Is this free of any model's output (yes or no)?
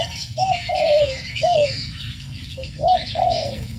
no